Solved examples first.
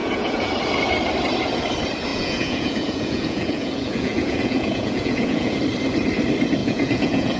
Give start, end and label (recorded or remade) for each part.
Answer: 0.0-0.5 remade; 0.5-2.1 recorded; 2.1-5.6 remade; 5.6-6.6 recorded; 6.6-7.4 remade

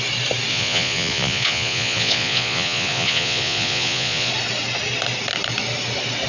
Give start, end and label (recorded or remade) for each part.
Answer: 0.0-0.5 recorded; 0.5-4.3 remade; 4.3-6.3 recorded